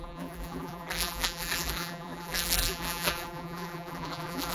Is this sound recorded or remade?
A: remade